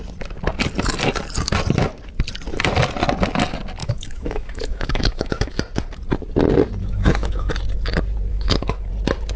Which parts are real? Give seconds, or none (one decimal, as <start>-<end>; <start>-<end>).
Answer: 0.0-3.8; 5.6-6.8; 7.5-8.3; 8.9-9.4